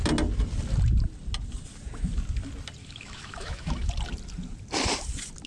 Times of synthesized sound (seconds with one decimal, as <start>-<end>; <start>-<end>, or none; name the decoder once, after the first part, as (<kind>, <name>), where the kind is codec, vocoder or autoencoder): 2.8-3.9 (autoencoder, DAC-VAE)